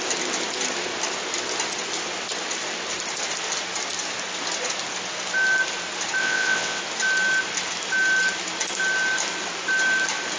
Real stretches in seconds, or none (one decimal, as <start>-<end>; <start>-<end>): 0.0-6.2; 6.8-10.4